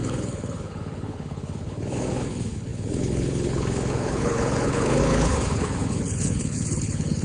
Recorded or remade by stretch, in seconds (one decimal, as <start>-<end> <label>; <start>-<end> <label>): 0.0-7.2 remade